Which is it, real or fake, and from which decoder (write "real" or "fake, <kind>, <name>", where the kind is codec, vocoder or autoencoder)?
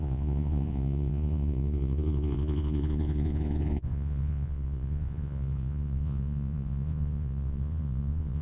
fake, vocoder, Vocos